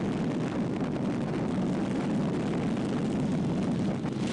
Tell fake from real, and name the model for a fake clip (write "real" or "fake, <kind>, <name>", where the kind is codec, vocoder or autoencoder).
real